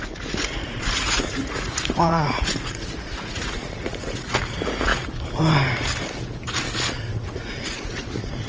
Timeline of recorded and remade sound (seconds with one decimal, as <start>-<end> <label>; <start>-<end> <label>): 0.0-4.9 remade; 4.9-7.0 recorded; 7.0-8.5 remade